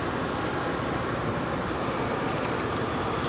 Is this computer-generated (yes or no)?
no